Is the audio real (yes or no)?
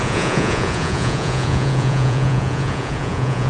no